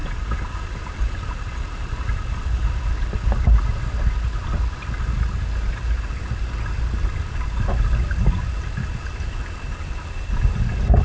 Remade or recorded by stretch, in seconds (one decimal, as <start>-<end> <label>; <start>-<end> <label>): 0.0-11.0 recorded